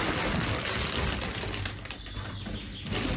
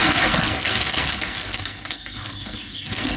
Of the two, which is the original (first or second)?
first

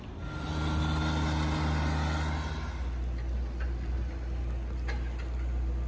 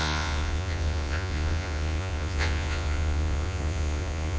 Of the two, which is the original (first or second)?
first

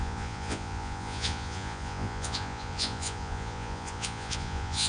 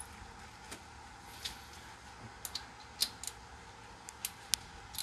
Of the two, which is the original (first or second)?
second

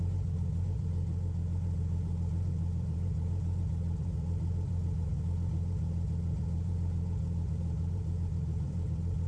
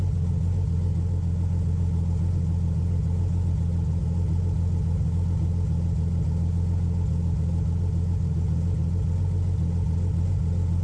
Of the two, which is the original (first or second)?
second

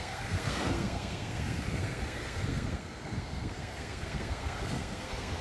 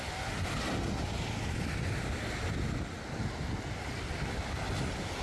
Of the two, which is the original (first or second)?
second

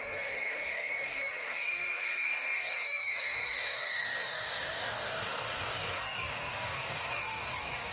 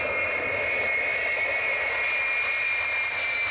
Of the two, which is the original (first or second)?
second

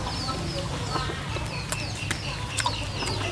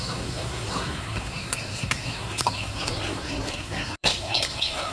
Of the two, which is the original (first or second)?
first